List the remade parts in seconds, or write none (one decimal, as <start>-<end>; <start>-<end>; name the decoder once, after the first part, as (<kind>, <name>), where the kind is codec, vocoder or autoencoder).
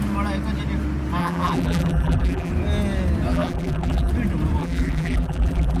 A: 1.2-2.5 (vocoder, BigVGAN v2); 3.3-4.1; 4.6-5.8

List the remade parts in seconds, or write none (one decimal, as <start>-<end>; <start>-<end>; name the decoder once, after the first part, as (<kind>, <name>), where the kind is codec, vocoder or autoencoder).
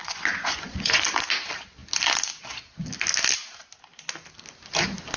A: 0.0-1.0 (vocoder, Vocos)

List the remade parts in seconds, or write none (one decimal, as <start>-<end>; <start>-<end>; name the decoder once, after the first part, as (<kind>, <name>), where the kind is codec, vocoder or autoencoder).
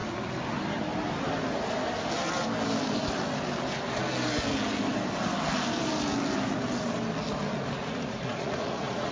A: 7.8-9.1 (vocoder, Vocos)